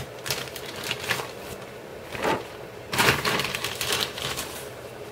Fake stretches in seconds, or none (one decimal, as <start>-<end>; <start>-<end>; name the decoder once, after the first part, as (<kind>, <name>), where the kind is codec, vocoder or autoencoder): 1.9-5.1 (vocoder, BigVGAN v2)